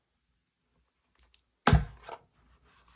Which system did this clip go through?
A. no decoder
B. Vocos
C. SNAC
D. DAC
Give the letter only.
A